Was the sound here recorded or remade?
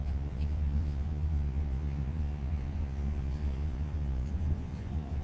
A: remade